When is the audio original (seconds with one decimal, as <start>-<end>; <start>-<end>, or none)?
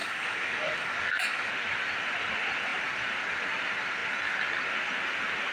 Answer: 1.5-5.5